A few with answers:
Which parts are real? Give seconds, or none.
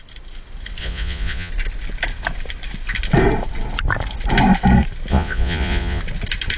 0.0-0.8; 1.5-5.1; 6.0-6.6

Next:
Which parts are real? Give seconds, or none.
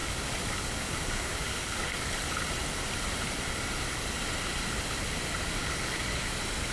2.1-5.6; 6.3-6.7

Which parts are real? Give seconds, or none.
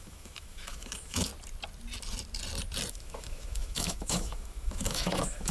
1.3-2.9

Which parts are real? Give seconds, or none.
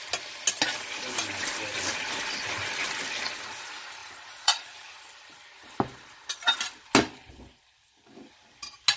0.0-4.0; 5.0-9.0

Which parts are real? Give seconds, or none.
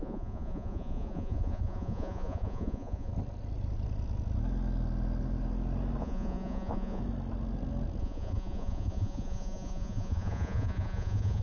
3.1-6.0; 7.0-8.0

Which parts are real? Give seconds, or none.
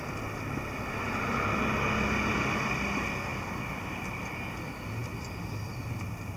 0.0-6.4